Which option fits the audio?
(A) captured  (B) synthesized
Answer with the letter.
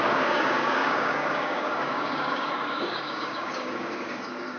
B